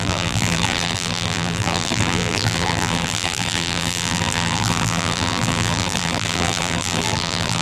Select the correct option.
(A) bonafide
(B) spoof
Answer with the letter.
B